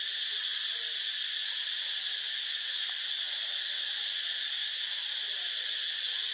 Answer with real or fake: real